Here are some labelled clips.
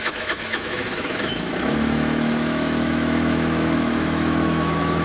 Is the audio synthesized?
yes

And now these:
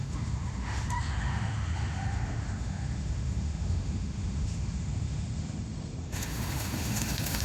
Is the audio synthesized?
yes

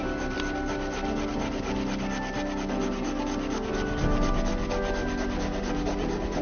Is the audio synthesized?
no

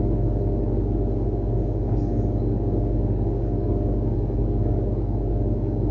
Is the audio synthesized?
yes